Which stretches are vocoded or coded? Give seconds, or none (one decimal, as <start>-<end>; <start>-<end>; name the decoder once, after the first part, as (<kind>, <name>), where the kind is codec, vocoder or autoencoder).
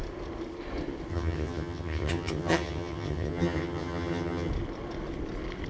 1.1-4.5 (vocoder, HiFi-GAN)